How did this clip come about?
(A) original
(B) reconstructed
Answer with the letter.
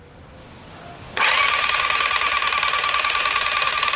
A